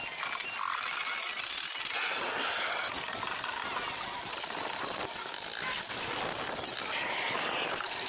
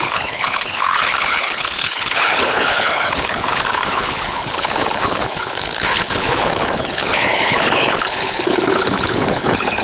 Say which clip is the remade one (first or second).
second